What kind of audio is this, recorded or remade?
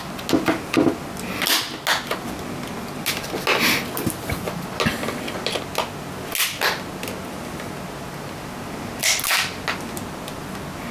recorded